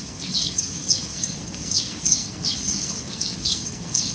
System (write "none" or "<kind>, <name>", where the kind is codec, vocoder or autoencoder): codec, SNAC